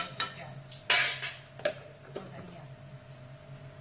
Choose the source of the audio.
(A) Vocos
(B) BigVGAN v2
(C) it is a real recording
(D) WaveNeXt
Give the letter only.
C